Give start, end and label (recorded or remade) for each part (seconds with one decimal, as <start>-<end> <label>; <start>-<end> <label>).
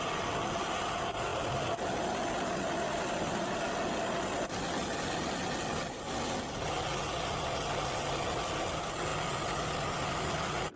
0.0-10.8 recorded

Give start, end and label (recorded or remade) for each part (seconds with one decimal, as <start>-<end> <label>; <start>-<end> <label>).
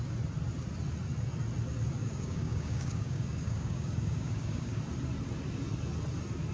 0.0-2.0 recorded; 2.0-4.8 remade; 4.8-6.5 recorded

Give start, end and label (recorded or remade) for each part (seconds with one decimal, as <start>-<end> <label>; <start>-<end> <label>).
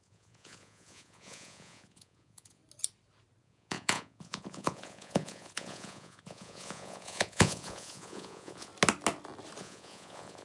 0.0-2.6 remade; 2.6-3.4 recorded; 3.4-8.7 remade; 8.7-9.6 recorded; 9.6-10.4 remade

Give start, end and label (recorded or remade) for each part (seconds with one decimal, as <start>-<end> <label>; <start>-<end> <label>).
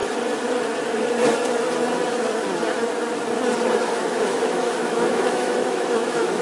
0.0-3.8 recorded; 3.8-6.4 remade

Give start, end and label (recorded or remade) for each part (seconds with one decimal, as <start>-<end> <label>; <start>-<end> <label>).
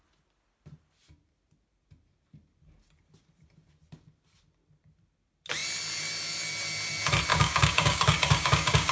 0.0-7.3 recorded; 7.3-8.9 remade